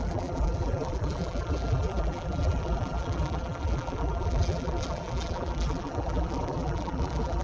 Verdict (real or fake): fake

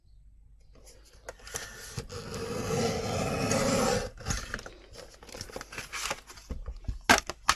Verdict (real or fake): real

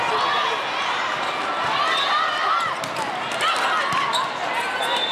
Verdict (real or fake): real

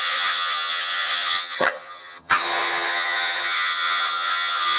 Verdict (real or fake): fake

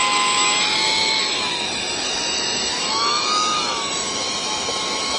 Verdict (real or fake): fake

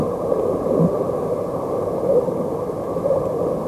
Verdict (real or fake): real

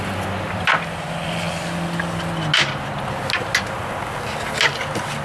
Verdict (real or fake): real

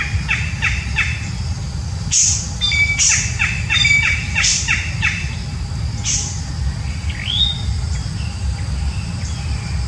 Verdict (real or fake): real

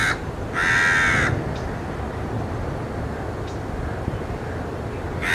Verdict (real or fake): real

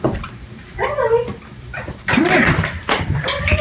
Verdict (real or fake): fake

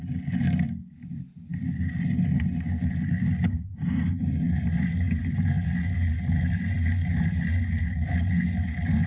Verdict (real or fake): real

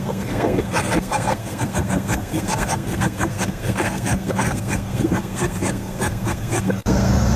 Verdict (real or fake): fake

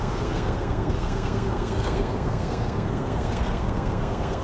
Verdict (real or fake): fake